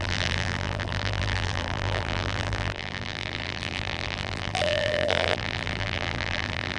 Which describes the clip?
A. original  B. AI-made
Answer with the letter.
B